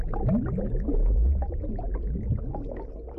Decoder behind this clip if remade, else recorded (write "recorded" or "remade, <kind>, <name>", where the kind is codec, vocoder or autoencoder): recorded